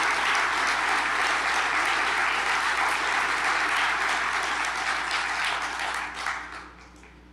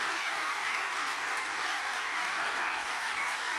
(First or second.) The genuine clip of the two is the first